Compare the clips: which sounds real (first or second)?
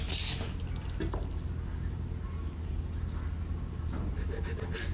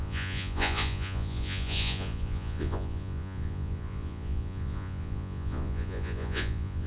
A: first